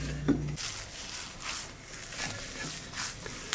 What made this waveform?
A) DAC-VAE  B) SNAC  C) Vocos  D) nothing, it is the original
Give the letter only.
D